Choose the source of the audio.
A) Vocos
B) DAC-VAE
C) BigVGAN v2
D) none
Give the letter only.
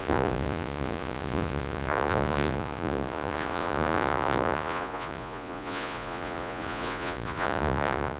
A